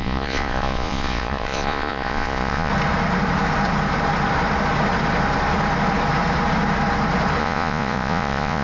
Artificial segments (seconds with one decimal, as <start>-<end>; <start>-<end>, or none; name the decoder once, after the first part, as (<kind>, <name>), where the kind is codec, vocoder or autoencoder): 0.0-2.7 (vocoder, Vocos); 7.4-8.6